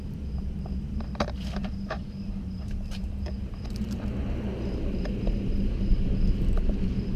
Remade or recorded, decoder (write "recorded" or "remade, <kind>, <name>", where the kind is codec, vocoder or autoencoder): remade, vocoder, BigVGAN v2